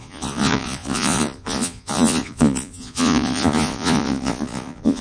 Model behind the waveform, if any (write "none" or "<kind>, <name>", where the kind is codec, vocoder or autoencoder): vocoder, Vocos